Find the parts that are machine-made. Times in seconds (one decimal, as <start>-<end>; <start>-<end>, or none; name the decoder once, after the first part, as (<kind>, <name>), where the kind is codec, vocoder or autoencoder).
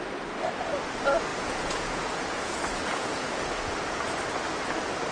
1.3-4.0 (vocoder, Vocos)